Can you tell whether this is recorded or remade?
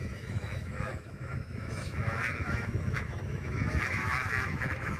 remade